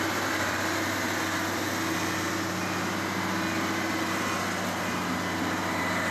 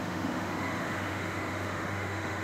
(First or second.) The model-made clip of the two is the second